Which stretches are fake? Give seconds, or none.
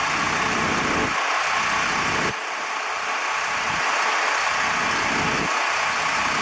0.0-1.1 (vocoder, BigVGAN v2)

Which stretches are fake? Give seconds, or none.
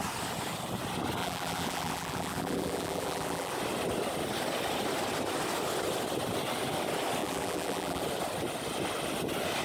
1.2-3.5 (vocoder, BigVGAN v2); 7.2-8.0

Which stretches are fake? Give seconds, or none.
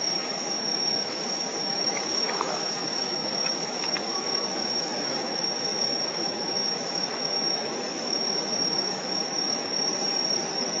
0.0-9.9 (autoencoder, DAC-VAE)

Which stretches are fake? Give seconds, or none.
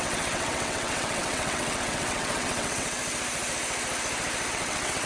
0.0-3.0 (vocoder, WaveNeXt); 4.5-5.1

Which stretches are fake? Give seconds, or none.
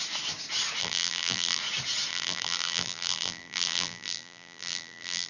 0.8-1.6 (vocoder, BigVGAN v2); 2.1-5.3